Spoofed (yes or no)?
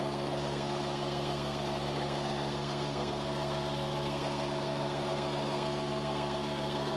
yes